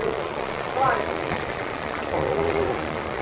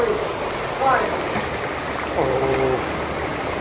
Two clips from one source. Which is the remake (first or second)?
first